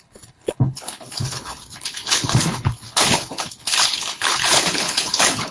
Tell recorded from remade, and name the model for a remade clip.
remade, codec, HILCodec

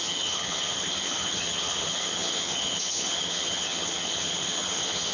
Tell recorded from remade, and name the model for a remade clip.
remade, vocoder, HiFi-GAN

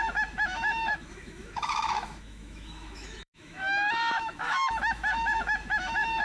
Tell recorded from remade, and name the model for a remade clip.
remade, autoencoder, DAC-VAE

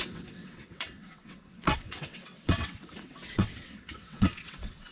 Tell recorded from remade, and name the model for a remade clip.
remade, vocoder, WaveNeXt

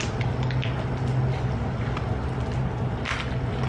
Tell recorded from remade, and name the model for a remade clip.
recorded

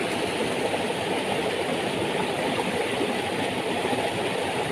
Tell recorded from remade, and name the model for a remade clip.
recorded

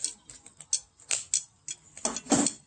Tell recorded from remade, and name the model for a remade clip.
recorded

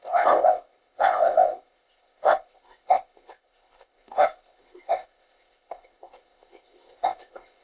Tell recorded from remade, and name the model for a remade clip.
remade, codec, ZipCodec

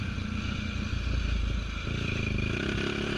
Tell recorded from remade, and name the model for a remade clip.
recorded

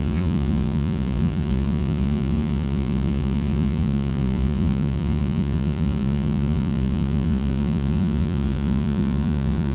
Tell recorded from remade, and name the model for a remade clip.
remade, vocoder, Vocos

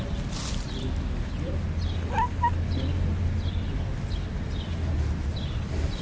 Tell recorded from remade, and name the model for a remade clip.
recorded